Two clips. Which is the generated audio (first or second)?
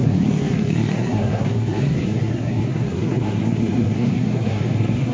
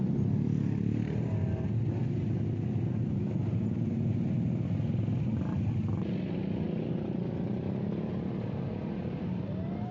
first